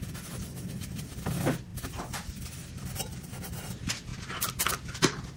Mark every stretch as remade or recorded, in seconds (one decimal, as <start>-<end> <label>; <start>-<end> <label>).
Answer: 0.0-4.1 remade; 4.1-4.7 recorded; 4.7-5.4 remade